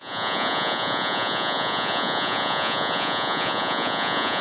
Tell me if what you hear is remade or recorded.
remade